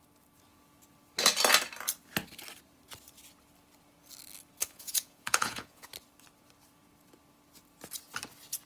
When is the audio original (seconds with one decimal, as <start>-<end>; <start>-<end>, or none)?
0.0-4.6; 5.9-8.7